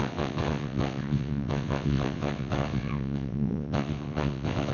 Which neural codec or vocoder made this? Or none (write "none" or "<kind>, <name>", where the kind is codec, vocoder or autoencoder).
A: vocoder, WaveNeXt